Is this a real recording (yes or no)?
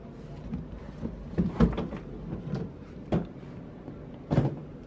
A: yes